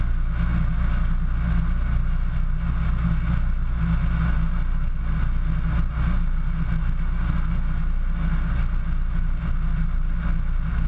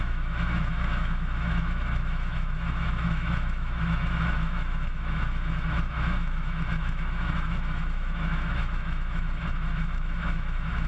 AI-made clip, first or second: second